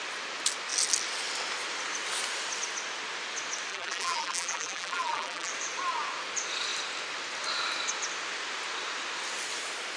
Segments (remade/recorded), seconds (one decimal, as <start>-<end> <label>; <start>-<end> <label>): 0.0-3.7 recorded; 3.7-5.5 remade; 5.5-10.0 recorded